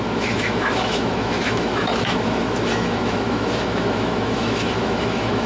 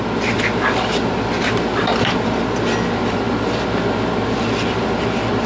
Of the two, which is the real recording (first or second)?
second